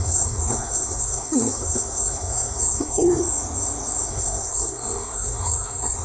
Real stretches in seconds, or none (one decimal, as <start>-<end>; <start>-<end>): 3.2-4.1